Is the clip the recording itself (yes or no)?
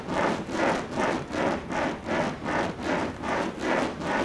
yes